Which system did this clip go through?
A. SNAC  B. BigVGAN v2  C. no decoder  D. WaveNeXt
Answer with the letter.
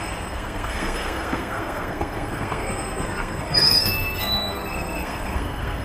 A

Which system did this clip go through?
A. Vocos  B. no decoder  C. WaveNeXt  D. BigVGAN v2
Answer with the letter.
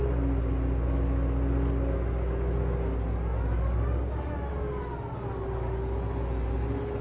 B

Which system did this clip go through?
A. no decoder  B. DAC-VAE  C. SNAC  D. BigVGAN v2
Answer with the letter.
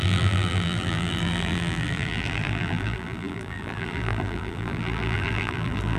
D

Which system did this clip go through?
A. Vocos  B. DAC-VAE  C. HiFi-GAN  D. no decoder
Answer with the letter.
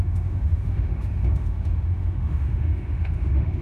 B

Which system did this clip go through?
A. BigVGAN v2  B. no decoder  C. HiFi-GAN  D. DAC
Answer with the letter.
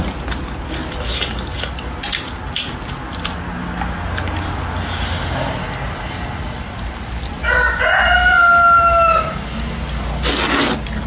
B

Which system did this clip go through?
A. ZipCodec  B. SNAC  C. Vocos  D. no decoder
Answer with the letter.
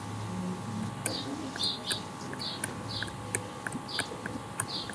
D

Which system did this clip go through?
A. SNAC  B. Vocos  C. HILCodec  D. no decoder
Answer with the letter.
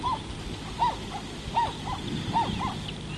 D